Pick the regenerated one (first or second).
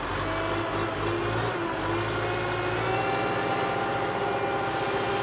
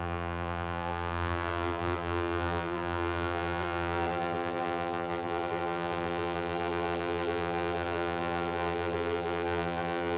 second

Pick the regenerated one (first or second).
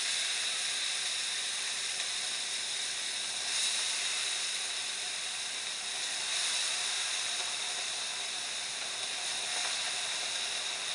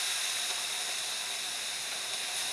first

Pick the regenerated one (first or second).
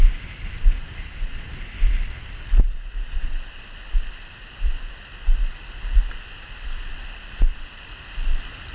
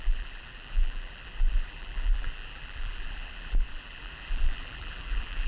second